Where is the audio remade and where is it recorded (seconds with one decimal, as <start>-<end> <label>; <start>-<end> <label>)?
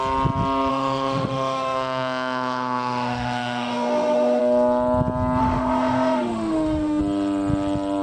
0.0-0.7 recorded; 0.7-4.4 remade; 4.4-5.4 recorded; 5.4-7.0 remade; 7.0-8.0 recorded